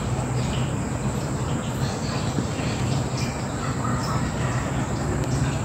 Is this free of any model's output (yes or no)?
yes